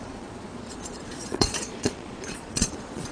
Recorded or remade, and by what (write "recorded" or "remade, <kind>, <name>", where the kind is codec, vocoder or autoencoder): remade, vocoder, Vocos